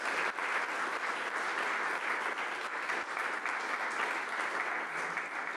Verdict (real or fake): real